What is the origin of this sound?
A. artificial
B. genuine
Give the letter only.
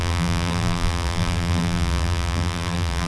A